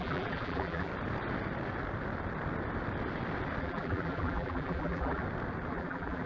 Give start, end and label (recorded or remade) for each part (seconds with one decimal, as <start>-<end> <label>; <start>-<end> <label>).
0.0-0.9 remade; 0.9-3.6 recorded; 3.6-5.2 remade; 5.2-5.7 recorded; 5.7-6.3 remade